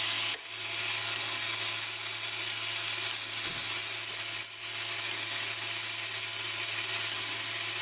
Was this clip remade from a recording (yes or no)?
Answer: no